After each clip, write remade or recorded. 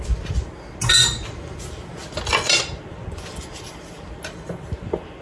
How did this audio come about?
recorded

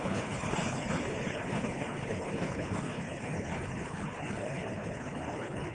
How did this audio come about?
remade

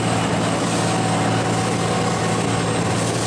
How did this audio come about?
recorded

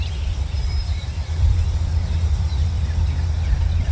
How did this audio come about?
recorded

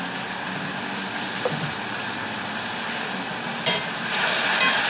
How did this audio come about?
recorded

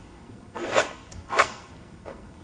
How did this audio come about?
remade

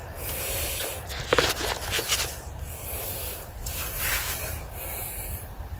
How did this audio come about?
remade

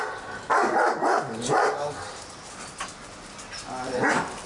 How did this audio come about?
recorded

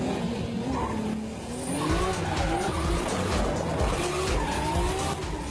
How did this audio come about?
recorded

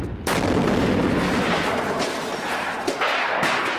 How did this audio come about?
recorded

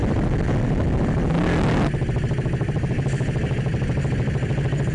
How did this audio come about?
recorded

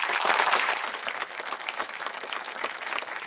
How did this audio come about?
remade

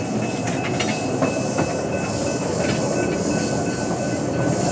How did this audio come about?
recorded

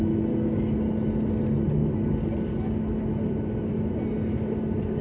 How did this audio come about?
recorded